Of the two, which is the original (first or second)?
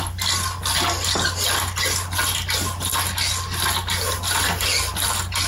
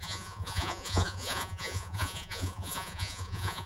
first